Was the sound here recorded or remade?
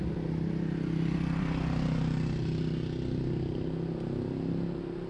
recorded